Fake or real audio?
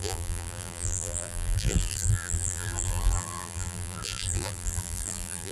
fake